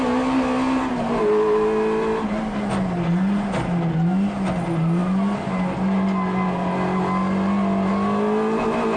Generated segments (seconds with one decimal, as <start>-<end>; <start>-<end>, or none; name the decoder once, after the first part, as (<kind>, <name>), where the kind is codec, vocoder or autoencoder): none